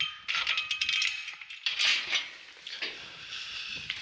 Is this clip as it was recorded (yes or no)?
yes